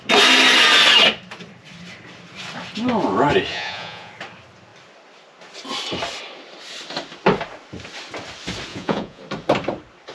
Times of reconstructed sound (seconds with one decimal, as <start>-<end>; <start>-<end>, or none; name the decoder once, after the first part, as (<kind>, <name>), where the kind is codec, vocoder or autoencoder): 3.5-4.1 (vocoder, Vocos); 8.7-9.2